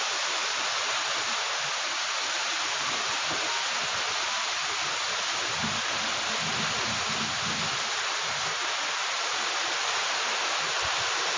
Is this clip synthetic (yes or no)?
no